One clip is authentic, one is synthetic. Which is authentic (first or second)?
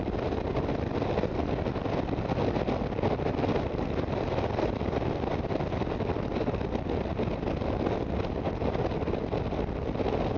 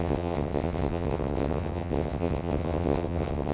first